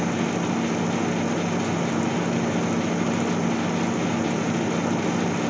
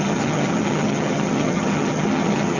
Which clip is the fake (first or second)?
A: second